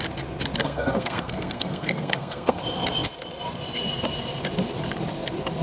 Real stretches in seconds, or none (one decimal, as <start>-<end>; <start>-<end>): 0.0-0.6; 2.6-5.6